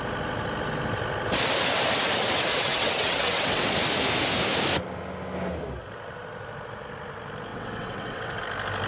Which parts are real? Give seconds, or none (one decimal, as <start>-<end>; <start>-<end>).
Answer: 0.0-2.5; 3.7-7.5; 8.4-8.9